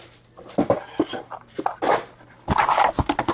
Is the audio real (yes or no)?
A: yes